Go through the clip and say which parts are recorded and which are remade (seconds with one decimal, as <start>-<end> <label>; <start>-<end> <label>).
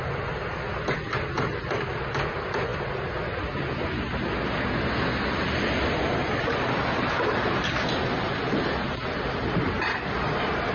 0.0-10.7 recorded